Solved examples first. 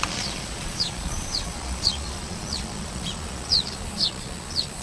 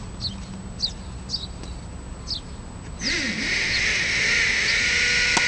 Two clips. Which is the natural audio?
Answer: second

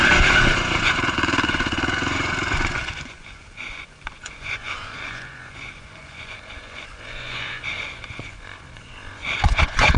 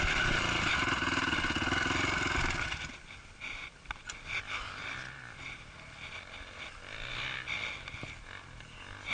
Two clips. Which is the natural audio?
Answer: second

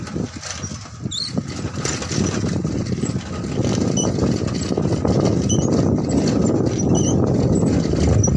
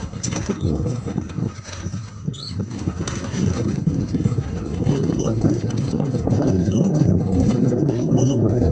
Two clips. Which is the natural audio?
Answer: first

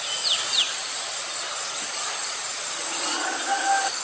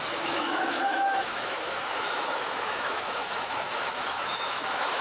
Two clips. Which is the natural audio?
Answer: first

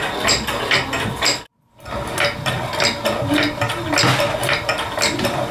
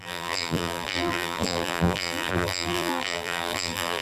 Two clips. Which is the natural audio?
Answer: first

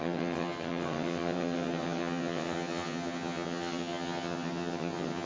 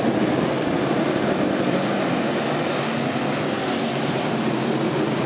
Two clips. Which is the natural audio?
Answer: second